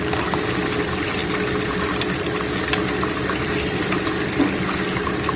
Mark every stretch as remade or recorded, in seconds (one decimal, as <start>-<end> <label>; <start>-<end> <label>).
0.0-5.4 recorded